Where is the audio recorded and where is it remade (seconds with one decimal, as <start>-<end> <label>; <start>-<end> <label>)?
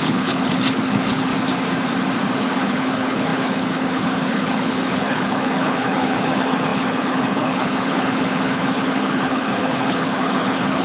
0.0-1.3 remade; 1.3-2.4 recorded; 2.4-10.8 remade